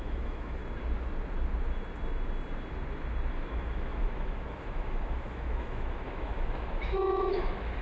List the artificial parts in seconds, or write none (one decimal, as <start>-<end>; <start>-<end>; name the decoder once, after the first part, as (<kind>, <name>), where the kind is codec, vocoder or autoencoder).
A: 0.0-0.6 (autoencoder, DAC-VAE); 3.3-7.8